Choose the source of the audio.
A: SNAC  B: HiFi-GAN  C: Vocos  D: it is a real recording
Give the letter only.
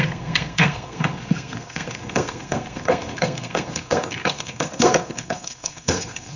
A